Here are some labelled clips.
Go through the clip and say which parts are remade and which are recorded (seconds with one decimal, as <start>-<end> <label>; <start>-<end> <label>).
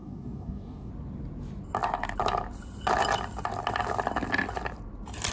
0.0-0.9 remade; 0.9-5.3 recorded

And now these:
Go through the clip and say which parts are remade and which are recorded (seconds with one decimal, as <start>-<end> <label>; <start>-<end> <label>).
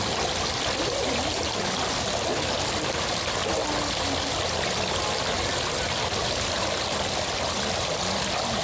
0.0-1.0 recorded; 1.0-1.6 remade; 1.6-8.6 recorded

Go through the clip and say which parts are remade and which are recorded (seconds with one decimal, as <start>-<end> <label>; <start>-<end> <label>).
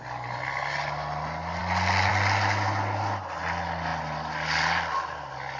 0.0-5.6 recorded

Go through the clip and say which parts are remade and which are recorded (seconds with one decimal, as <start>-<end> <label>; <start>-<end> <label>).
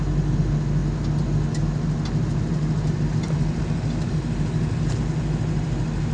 0.0-6.1 recorded